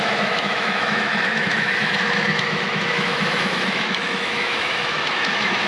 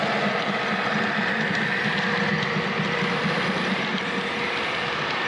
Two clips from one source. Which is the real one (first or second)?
second